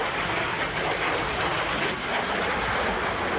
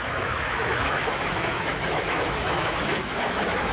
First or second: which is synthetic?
second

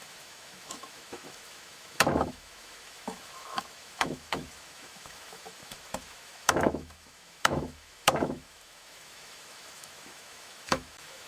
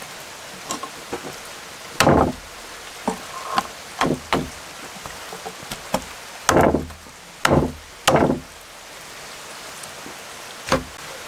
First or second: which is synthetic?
first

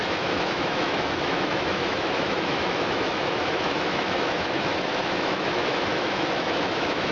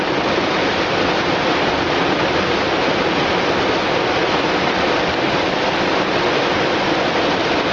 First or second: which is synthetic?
first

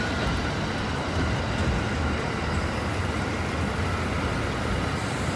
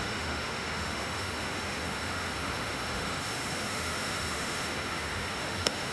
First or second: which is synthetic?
second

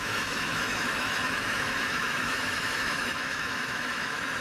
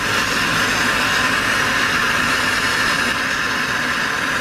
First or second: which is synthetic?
first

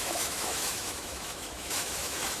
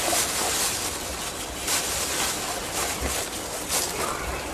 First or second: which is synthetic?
first